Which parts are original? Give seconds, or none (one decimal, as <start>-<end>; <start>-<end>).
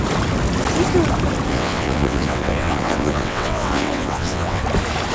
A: 0.0-1.5; 4.6-5.1